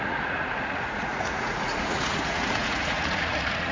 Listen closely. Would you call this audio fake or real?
fake